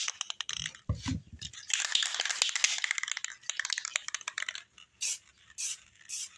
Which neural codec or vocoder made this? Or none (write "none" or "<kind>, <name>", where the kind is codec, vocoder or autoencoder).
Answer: none